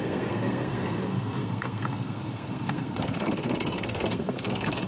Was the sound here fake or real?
fake